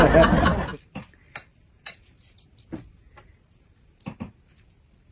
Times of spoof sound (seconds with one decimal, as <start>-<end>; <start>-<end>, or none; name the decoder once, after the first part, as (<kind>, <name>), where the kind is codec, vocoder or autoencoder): 0.7-1.9 (vocoder, BigVGAN v2)